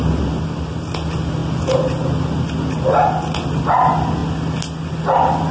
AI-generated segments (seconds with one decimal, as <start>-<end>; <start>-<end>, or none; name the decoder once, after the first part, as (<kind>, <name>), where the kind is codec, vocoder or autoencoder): none